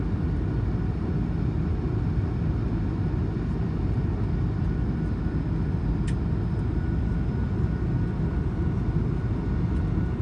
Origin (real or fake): real